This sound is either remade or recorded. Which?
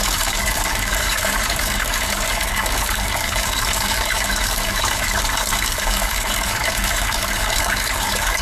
remade